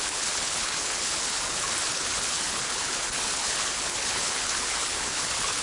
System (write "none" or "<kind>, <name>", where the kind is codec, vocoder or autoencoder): codec, HILCodec